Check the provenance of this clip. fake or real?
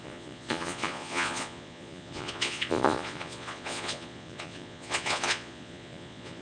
fake